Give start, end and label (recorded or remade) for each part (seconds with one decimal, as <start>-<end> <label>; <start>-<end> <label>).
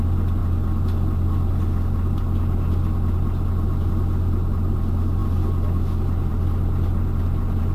0.0-7.7 recorded